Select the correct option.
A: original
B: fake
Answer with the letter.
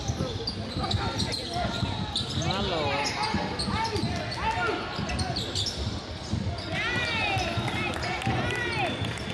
A